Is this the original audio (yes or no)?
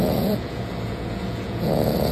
no